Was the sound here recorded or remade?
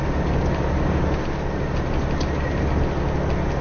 recorded